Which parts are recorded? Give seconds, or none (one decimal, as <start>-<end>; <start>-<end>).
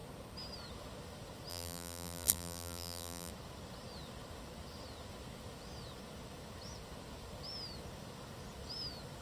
0.0-1.5; 3.3-9.2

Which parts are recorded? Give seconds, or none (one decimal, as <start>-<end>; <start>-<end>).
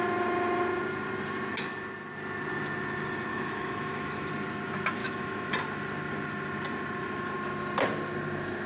0.0-3.3; 4.3-5.0; 5.5-8.7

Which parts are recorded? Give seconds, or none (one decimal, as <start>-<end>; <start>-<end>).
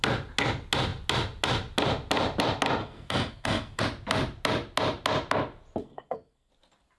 0.0-2.8; 3.8-5.8; 6.5-7.0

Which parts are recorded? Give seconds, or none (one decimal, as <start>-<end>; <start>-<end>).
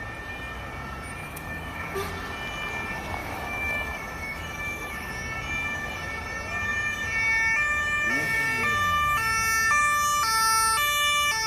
0.0-1.2; 2.1-3.2; 5.1-11.5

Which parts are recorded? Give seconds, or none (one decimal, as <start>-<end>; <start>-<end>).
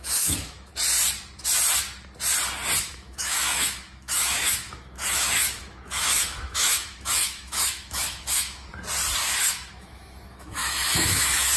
0.7-2.8; 8.7-9.4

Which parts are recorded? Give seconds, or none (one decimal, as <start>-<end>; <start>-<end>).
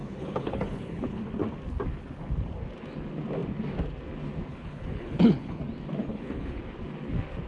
1.2-4.5; 5.6-6.1; 6.6-7.5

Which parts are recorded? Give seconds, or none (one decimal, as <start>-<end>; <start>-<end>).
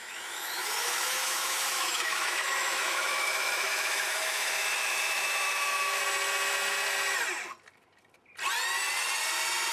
6.0-9.7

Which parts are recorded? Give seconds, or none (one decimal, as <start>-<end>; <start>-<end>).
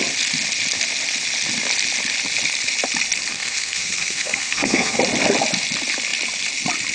0.0-3.3; 5.0-6.9